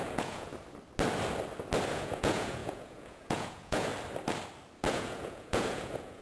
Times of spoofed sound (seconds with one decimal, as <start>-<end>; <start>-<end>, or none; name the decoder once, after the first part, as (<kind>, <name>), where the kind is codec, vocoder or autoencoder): 0.0-0.5 (vocoder, Vocos); 1.9-3.9; 4.9-6.2